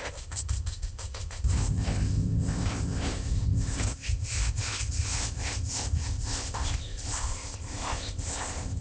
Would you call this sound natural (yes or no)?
no